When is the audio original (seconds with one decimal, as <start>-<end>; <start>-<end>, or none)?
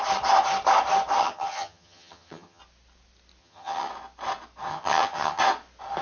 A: 0.0-1.2; 2.6-3.4; 3.9-4.7; 5.4-6.0